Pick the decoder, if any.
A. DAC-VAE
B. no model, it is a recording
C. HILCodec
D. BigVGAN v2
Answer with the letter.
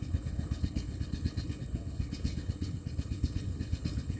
C